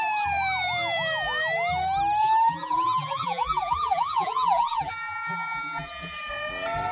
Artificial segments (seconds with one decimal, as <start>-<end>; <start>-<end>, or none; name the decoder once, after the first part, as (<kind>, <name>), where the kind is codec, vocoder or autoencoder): 2.2-6.3 (vocoder, BigVGAN v2)